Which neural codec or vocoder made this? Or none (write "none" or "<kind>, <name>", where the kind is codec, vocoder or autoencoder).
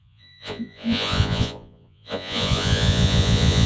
vocoder, Vocos